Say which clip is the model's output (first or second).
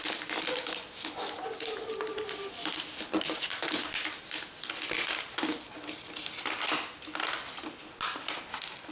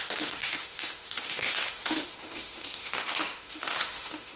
second